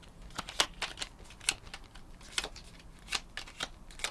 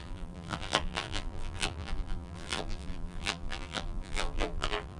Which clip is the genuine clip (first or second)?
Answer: first